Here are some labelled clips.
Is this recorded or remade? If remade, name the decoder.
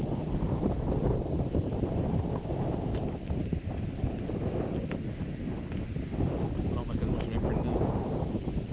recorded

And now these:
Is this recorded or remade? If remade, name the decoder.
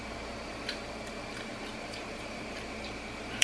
remade, vocoder, BigVGAN v2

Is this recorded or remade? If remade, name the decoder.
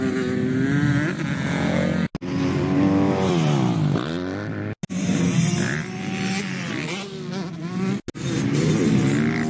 recorded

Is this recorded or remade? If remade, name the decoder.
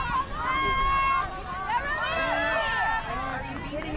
recorded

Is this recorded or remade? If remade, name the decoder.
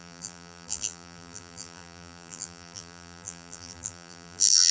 remade, vocoder, BigVGAN v2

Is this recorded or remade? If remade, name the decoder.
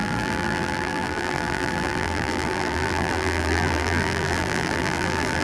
remade, vocoder, BigVGAN v2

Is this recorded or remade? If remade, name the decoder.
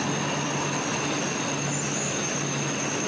recorded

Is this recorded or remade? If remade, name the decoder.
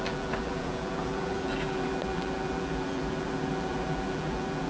remade, vocoder, BigVGAN v2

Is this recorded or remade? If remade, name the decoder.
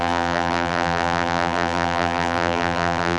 remade, vocoder, BigVGAN v2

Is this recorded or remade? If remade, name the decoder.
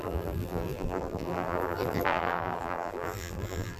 remade, vocoder, BigVGAN v2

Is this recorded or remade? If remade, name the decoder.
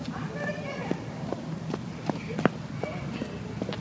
recorded